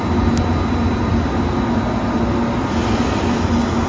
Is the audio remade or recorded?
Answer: recorded